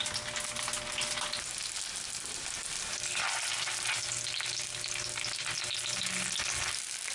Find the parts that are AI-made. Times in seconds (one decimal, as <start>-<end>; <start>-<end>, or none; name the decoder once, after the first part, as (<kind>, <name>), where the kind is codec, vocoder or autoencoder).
none

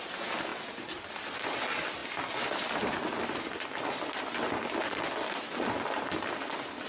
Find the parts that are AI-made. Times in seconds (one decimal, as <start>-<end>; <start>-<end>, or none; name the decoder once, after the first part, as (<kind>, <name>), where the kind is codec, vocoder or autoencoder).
none

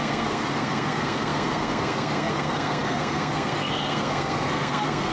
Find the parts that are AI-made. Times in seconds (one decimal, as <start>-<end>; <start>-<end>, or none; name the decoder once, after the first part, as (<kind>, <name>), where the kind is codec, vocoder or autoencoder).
0.0-5.1 (codec, SNAC)

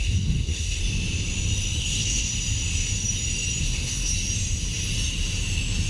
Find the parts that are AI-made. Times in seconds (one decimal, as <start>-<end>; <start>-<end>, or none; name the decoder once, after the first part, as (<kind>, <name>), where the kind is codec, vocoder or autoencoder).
0.0-0.8 (codec, SNAC); 1.8-2.3; 3.6-4.1

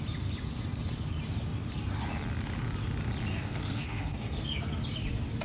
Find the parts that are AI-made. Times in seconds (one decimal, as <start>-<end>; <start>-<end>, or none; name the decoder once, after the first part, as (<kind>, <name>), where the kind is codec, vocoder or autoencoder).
3.3-4.6 (codec, SNAC)

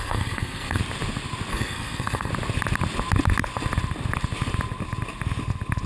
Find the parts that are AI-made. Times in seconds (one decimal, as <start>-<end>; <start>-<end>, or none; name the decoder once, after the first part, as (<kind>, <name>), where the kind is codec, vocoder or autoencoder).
0.0-0.8 (codec, SNAC); 1.5-2.3